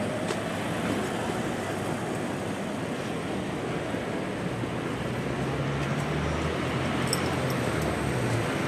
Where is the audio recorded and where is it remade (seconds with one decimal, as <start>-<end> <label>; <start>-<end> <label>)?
0.0-8.7 recorded